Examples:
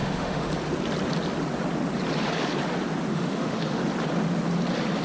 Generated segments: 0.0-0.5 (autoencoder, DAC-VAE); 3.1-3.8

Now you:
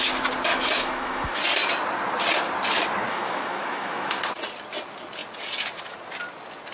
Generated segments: 0.5-1.4 (autoencoder, DAC-VAE); 3.1-4.2

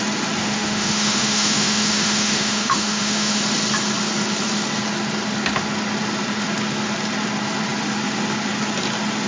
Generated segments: 0.4-3.4 (autoencoder, DAC-VAE)

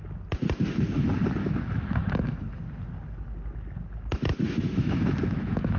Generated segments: 1.4-2.4 (autoencoder, DAC-VAE); 4.3-5.8

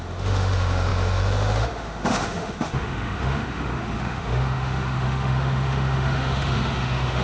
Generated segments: 0.0-7.2 (autoencoder, DAC-VAE)

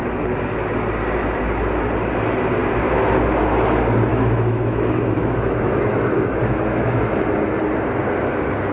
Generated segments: 4.1-7.0 (autoencoder, DAC-VAE)

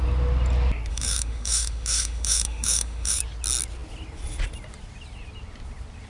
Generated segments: 0.9-3.2 (autoencoder, DAC-VAE)